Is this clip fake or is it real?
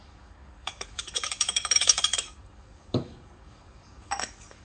fake